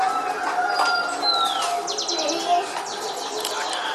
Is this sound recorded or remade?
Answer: recorded